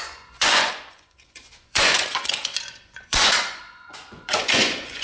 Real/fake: fake